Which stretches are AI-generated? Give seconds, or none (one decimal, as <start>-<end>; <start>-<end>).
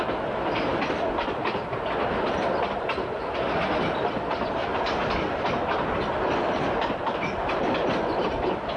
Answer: none